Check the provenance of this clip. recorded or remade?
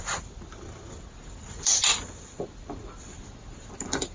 remade